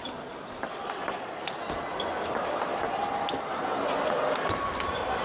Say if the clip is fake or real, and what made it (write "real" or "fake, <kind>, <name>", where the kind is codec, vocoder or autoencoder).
real